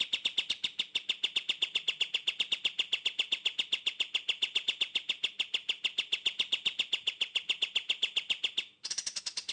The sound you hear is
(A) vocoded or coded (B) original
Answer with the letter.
B